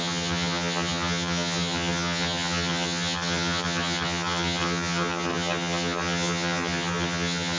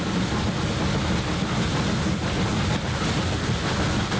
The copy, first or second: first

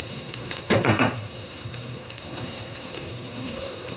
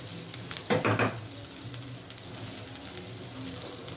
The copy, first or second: first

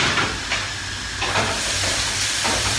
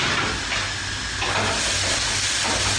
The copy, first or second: first